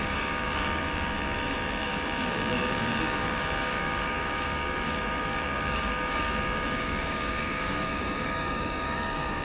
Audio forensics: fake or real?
fake